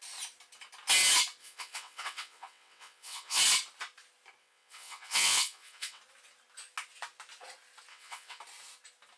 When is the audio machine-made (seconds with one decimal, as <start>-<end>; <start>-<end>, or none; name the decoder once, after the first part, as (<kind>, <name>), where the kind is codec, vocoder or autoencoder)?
1.4-3.4 (vocoder, WaveNeXt); 4.4-6.0; 7.9-8.4